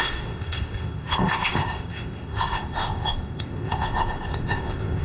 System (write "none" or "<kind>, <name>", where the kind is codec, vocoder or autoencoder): codec, ZipCodec